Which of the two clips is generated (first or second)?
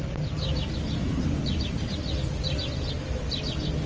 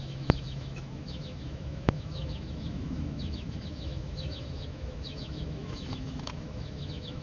second